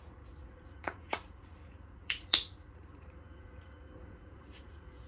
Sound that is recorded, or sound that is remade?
remade